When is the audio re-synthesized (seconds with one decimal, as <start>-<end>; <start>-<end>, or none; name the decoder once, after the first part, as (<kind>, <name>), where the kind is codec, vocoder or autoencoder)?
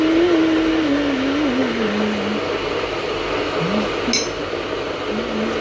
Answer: none